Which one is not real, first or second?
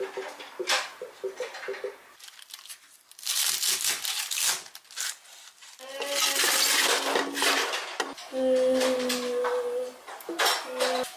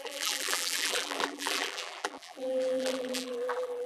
second